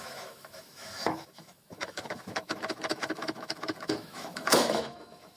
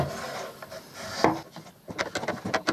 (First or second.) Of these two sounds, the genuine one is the second